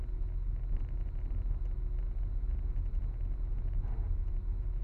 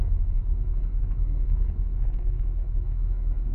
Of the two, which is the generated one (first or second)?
second